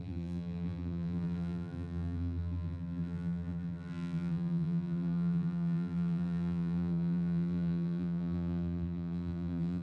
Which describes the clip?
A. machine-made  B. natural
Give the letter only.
A